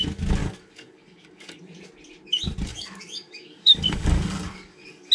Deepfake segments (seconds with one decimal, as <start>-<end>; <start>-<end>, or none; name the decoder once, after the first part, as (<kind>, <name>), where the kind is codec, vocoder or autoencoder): 0.4-1.6 (codec, DAC); 2.7-5.1